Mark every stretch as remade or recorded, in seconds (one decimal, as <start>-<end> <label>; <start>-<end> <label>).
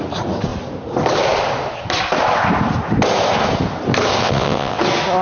0.0-4.2 recorded; 4.2-4.8 remade; 4.8-5.2 recorded